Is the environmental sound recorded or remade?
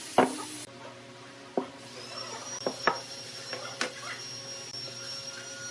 recorded